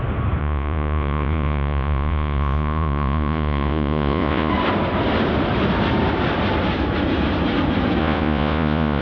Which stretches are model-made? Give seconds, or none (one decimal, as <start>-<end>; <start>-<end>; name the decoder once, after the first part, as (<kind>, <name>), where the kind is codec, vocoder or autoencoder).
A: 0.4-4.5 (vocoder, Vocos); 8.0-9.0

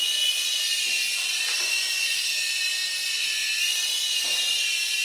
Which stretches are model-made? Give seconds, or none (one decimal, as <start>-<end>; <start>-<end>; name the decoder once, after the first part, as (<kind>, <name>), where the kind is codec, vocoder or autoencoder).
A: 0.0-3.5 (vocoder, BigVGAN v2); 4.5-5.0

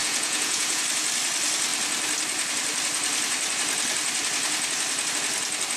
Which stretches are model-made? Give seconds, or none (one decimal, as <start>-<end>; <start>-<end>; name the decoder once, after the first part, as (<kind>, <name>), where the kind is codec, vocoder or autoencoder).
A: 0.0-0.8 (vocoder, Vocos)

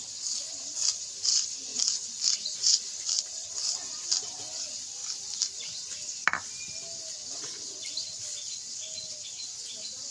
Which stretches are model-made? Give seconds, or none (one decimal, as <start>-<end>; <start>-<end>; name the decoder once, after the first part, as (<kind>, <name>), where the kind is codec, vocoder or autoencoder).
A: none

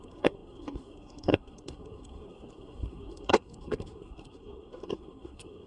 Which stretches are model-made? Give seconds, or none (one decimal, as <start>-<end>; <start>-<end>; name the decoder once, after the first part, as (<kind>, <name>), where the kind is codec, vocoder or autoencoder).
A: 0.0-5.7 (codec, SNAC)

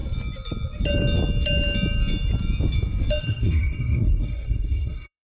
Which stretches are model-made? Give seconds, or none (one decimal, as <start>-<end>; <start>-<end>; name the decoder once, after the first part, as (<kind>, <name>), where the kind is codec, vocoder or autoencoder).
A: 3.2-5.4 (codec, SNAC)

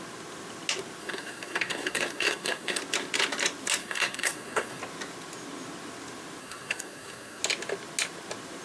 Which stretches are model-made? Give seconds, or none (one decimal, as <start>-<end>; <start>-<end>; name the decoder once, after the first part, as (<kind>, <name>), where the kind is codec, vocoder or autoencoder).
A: 1.0-2.8 (codec, SNAC); 3.8-4.8; 6.4-7.4